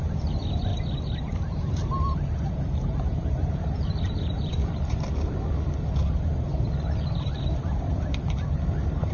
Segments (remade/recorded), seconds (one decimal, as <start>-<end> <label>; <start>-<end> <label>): 0.0-0.7 remade; 0.7-1.2 recorded; 1.2-4.5 remade; 4.5-6.0 recorded; 6.0-9.1 remade